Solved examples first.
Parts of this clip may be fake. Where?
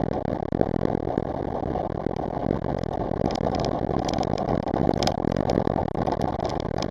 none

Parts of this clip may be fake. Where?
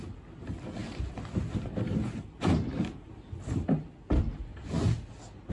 none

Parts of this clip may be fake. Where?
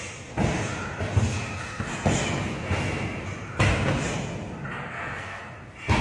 4.8-5.4 (codec, SNAC)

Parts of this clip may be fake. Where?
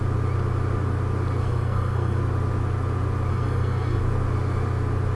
1.4-2.2 (codec, SNAC); 3.3-4.0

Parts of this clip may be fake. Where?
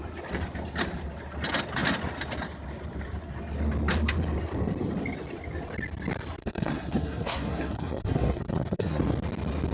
6.4-9.0 (codec, SNAC)